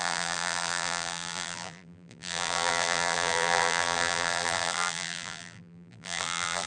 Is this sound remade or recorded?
remade